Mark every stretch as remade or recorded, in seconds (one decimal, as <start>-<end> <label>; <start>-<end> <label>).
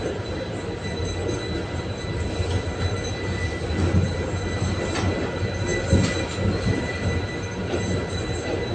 0.0-8.7 recorded